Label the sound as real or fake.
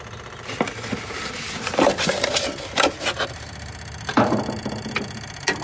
real